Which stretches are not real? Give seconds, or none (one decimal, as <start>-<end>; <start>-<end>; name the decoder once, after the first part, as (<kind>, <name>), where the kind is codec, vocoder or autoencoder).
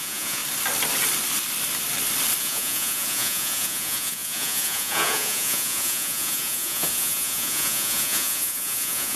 0.0-0.4 (vocoder, Vocos); 2.4-9.2